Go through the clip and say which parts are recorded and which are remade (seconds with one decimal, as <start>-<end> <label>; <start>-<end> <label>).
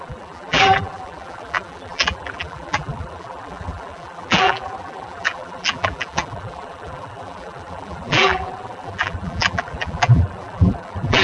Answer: 0.0-11.2 remade